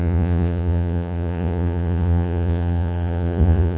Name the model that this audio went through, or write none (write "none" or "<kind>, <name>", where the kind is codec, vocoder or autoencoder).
vocoder, Vocos